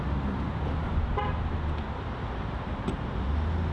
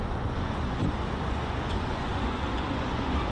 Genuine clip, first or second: first